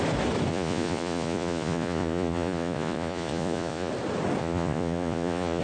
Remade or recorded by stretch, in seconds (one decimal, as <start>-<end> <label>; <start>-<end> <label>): 0.0-0.5 recorded; 0.5-3.9 remade; 3.9-4.4 recorded; 4.4-5.6 remade